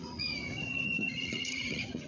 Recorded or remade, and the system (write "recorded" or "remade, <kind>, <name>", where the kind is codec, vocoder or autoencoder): remade, vocoder, Vocos